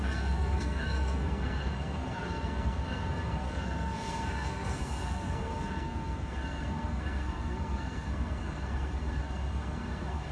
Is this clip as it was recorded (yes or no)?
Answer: no